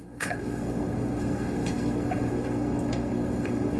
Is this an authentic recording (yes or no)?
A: no